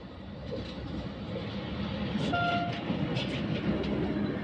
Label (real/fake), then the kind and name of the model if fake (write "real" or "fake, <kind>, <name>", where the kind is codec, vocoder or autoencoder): real